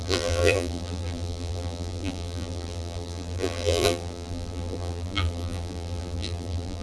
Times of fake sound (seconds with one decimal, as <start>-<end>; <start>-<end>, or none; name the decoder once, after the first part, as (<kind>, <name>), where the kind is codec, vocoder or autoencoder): 0.0-6.8 (vocoder, BigVGAN v2)